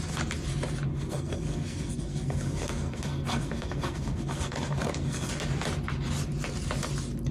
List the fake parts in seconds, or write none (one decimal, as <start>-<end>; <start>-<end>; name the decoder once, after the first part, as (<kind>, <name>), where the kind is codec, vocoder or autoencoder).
0.9-5.3 (codec, SNAC)